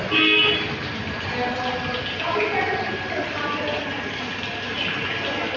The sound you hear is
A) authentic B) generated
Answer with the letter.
A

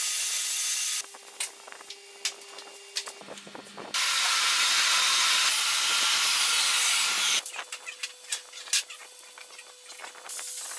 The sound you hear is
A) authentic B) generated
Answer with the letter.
A